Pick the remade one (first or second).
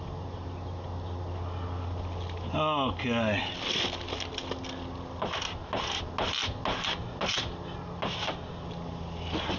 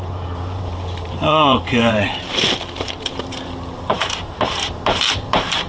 second